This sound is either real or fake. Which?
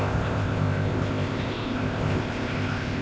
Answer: fake